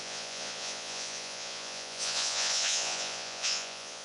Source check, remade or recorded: remade